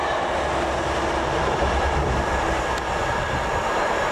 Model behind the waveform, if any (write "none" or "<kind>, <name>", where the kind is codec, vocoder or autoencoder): none